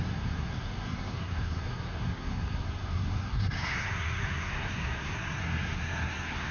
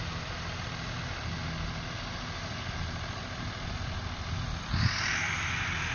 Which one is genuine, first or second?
second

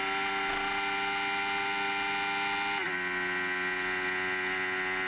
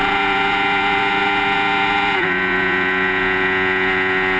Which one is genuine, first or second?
first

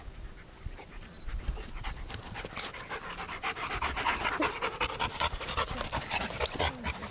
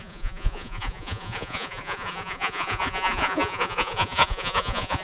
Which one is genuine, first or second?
first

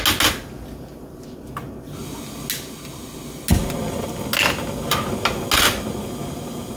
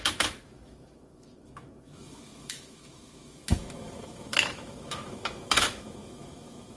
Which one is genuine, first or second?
first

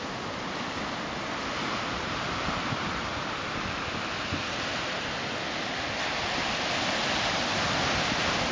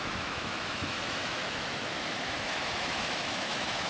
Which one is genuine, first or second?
first